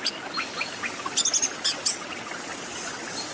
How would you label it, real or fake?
real